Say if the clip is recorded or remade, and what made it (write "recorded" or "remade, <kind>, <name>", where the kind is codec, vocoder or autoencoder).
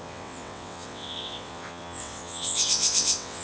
remade, vocoder, WaveNeXt